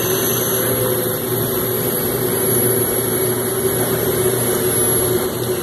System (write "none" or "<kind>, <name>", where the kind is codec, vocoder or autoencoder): none